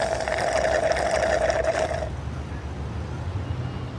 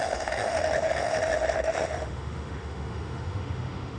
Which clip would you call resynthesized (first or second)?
second